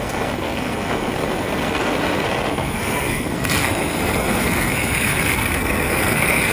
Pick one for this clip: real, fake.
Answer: fake